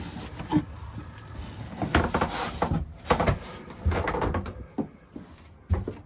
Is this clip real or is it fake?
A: real